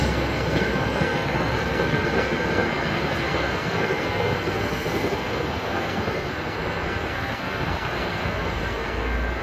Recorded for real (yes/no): no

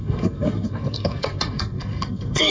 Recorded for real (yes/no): no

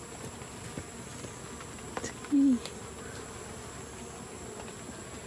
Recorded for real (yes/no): yes